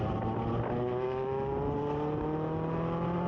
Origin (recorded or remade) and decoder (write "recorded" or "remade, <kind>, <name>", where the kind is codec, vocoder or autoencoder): recorded